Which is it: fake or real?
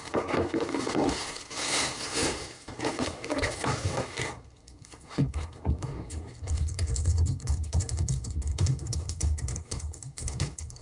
fake